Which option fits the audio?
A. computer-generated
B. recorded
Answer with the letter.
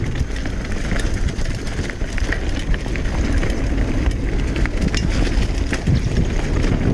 B